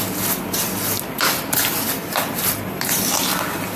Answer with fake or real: real